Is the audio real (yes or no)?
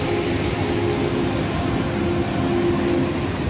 yes